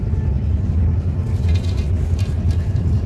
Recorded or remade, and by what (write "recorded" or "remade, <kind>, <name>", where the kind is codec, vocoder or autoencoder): recorded